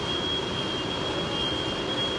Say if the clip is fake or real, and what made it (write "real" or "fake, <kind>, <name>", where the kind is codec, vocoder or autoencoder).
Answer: real